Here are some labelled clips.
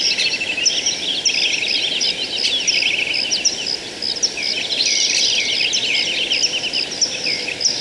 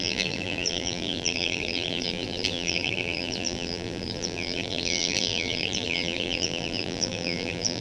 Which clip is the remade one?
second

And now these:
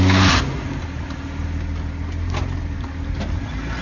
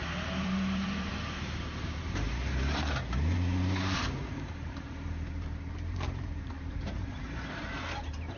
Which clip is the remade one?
second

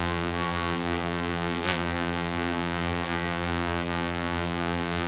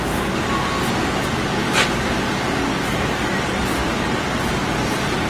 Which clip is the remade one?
first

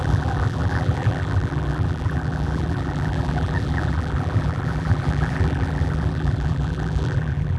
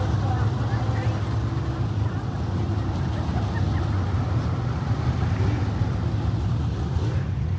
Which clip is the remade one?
first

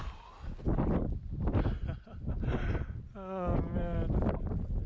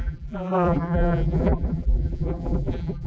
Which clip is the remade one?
second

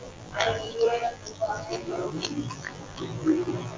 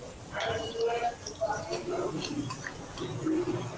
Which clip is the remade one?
first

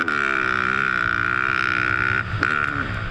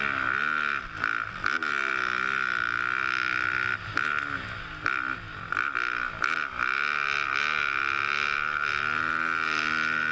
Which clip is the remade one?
first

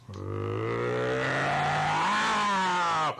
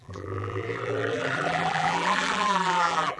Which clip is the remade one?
second